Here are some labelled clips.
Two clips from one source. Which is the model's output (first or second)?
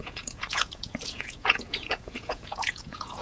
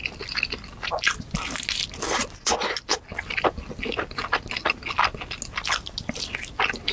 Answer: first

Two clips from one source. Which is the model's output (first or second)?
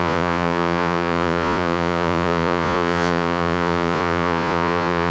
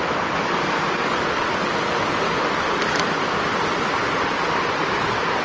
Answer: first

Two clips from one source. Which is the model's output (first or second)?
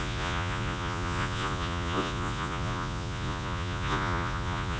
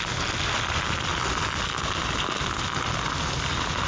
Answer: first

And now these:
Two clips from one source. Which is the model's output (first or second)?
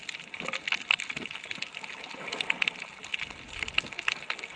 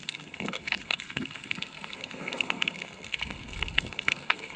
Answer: second